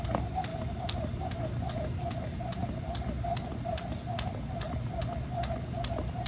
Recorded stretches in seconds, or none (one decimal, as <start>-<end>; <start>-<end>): 0.0-6.3